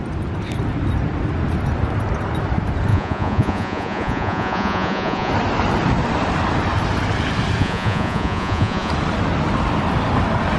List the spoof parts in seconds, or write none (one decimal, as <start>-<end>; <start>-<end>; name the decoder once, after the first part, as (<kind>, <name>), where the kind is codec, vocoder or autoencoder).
2.9-5.3 (vocoder, Vocos); 7.6-8.9

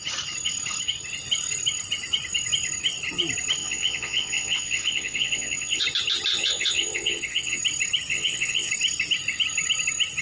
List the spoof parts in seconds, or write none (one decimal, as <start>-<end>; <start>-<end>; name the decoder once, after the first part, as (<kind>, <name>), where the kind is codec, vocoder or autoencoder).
3.6-5.8 (vocoder, Vocos); 6.3-7.6; 8.1-8.7

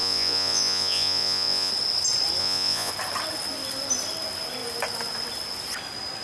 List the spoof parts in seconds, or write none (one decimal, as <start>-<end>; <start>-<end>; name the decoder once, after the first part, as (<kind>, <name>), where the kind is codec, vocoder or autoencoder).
0.0-1.7 (vocoder, Vocos); 2.4-2.9

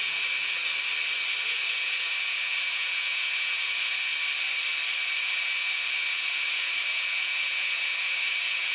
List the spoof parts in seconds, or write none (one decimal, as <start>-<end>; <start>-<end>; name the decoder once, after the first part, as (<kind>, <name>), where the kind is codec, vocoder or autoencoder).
0.0-0.6 (vocoder, Vocos); 1.5-4.1; 5.2-8.7